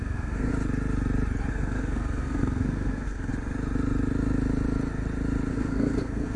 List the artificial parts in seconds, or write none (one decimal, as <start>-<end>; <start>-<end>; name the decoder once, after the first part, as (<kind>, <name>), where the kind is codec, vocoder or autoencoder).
0.0-0.5 (codec, SNAC); 1.5-3.3; 5.5-6.4